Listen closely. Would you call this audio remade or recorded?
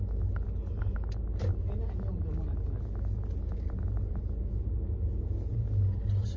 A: recorded